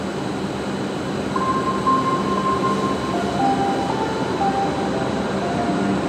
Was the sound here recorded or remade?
recorded